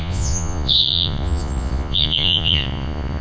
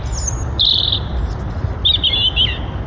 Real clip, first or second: second